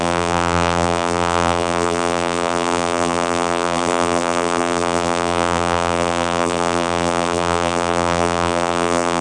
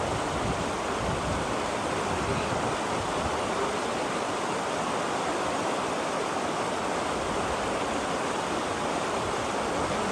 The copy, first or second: first